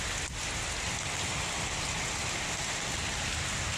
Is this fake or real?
real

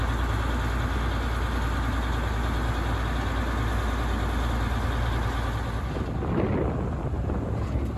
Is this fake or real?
real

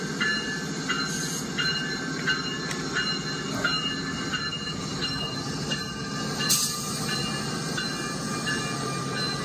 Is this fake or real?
real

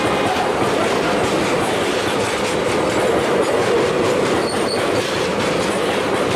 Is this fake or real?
real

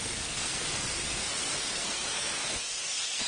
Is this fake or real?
fake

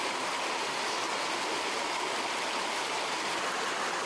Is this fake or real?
real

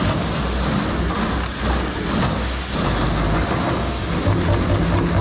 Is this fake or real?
real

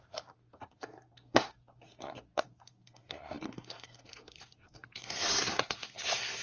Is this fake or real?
fake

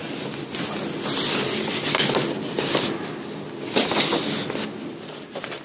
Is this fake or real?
real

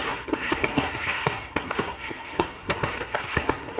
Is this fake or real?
fake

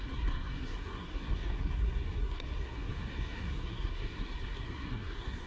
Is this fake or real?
fake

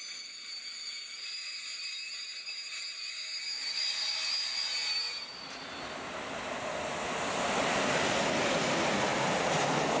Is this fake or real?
real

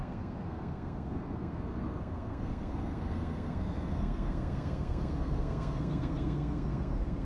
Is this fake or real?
fake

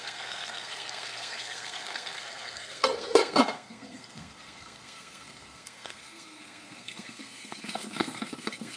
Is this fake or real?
fake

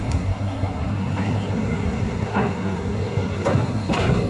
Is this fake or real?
fake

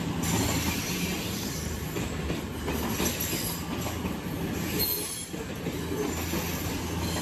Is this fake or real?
real